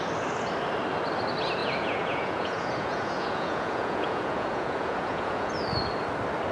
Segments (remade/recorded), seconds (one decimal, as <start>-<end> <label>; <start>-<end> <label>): 0.0-1.6 recorded; 1.6-5.5 remade; 5.5-6.5 recorded

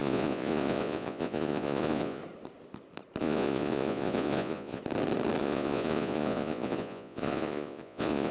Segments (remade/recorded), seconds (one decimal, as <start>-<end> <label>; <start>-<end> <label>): 0.0-2.2 remade; 2.2-3.2 recorded; 3.2-4.8 remade; 4.8-5.4 recorded; 5.4-8.3 remade

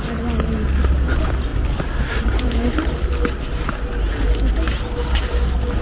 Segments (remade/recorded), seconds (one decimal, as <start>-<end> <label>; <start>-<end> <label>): 0.0-5.8 recorded

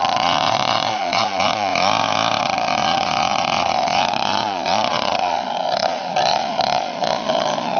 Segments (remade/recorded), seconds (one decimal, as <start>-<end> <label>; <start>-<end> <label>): 0.0-1.7 remade; 1.7-2.4 recorded; 2.4-7.8 remade

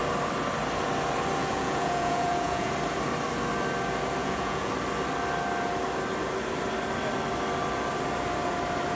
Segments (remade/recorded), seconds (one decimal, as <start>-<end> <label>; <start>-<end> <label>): 0.0-1.4 recorded; 1.4-2.7 remade; 2.7-4.2 recorded; 4.2-4.7 remade; 4.7-9.0 recorded

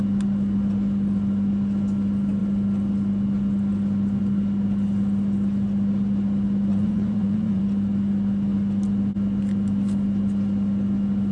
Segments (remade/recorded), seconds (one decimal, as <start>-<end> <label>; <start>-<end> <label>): 0.0-6.7 recorded; 6.7-7.6 remade; 7.6-11.3 recorded

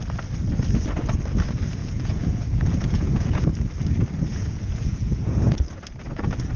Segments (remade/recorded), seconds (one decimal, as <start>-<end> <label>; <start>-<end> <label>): 0.0-1.8 recorded; 1.8-3.4 remade; 3.4-4.3 recorded; 4.3-5.4 remade; 5.4-6.6 recorded